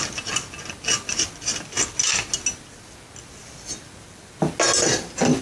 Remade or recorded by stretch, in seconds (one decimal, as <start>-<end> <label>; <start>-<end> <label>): 0.0-5.4 recorded

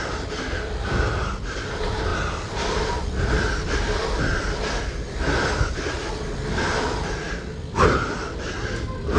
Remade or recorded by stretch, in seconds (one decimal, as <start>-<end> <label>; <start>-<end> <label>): 0.0-9.2 recorded

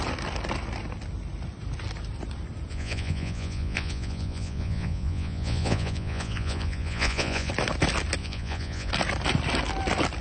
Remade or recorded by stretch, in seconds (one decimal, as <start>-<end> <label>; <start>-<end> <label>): 0.0-2.7 recorded; 2.7-7.5 remade; 7.5-8.2 recorded; 8.2-8.9 remade; 8.9-10.2 recorded

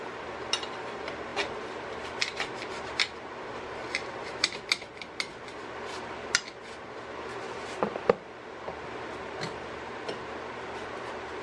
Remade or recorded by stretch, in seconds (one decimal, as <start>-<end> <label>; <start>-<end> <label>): 0.0-11.4 recorded